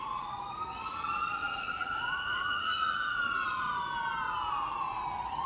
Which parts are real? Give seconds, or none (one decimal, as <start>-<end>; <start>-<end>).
3.8-4.4